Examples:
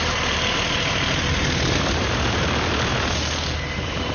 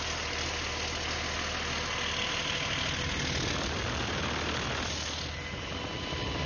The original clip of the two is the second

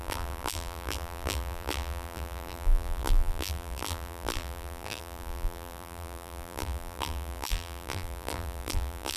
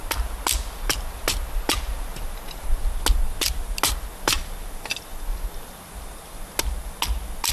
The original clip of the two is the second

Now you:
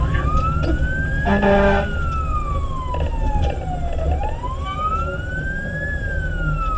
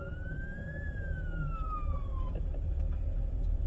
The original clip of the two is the first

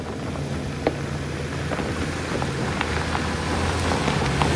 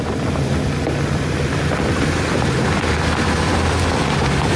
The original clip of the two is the first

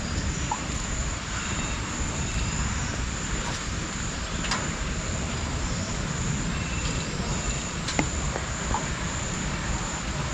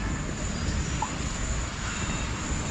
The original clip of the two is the second